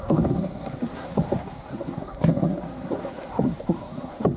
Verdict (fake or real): fake